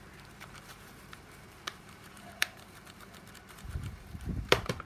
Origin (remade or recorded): remade